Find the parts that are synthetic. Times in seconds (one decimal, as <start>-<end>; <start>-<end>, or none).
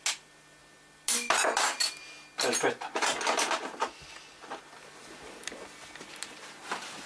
none